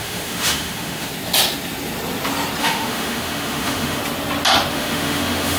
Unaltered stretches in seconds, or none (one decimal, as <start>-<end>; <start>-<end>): 1.1-2.6; 4.0-4.7